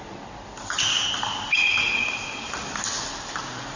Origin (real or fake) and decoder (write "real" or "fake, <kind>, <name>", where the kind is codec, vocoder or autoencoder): real